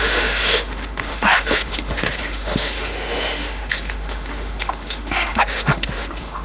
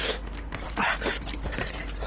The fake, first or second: first